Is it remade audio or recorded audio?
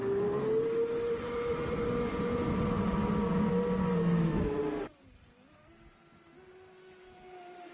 recorded